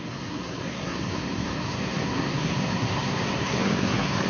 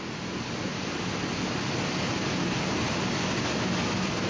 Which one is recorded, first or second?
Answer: second